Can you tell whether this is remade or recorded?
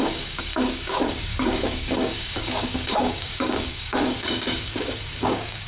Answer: remade